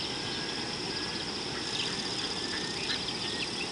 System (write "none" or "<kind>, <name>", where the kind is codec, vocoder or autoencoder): vocoder, BigVGAN v2